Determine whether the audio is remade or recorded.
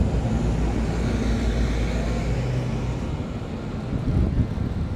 recorded